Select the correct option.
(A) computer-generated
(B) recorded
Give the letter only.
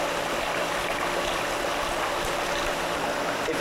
B